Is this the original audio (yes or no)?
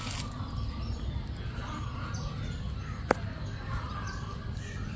yes